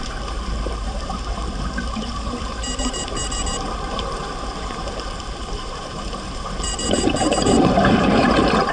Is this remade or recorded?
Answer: remade